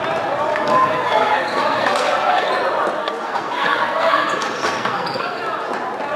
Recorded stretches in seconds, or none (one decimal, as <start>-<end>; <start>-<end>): 0.0-0.5; 2.5-3.0; 5.4-6.2